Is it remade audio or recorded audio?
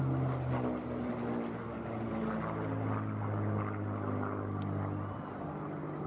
recorded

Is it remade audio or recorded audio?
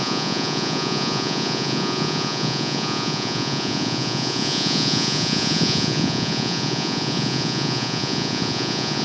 remade